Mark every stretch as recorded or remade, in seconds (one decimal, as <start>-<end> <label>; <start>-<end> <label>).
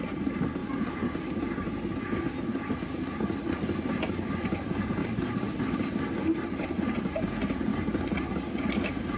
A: 0.0-0.6 recorded; 0.6-1.6 remade; 1.6-5.0 recorded; 5.0-5.6 remade; 5.6-7.7 recorded; 7.7-8.3 remade; 8.3-9.2 recorded